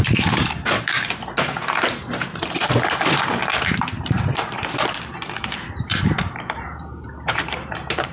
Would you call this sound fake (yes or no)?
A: yes